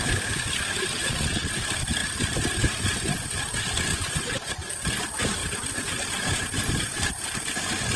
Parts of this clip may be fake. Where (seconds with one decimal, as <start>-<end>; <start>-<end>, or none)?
0.9-1.5; 3.9-4.7